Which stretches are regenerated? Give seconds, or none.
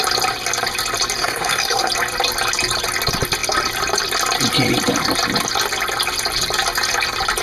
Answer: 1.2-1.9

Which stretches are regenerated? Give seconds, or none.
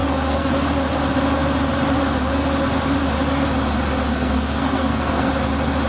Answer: 0.0-0.5; 4.1-5.3